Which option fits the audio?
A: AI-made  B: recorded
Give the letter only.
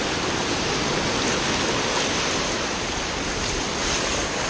B